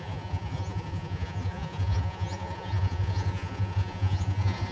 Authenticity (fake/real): fake